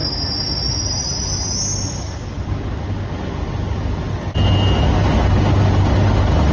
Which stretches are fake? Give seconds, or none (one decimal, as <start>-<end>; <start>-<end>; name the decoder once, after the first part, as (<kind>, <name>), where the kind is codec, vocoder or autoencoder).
none